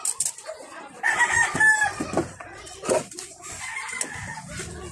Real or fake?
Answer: real